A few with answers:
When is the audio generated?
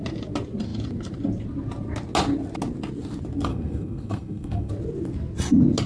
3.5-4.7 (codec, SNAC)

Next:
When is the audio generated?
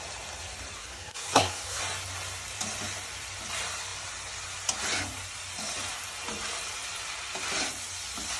0.8-1.8 (codec, SNAC)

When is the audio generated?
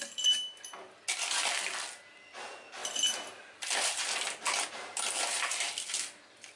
none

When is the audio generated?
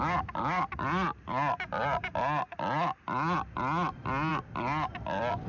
none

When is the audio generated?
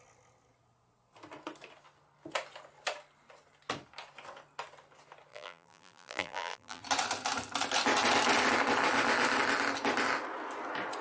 5.3-6.8 (vocoder, BigVGAN v2)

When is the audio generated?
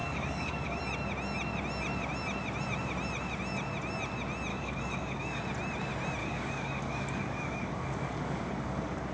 0.0-0.8 (codec, DAC); 4.5-5.4; 6.2-9.1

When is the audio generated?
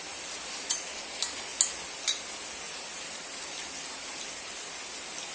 none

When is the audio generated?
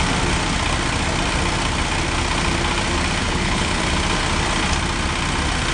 3.2-3.8 (codec, HILCodec)